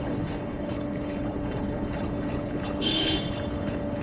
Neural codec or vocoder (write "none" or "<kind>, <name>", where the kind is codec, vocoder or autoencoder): codec, HILCodec